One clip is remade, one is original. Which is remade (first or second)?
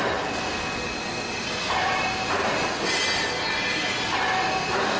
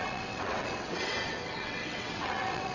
second